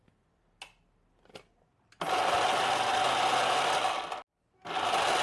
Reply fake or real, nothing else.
real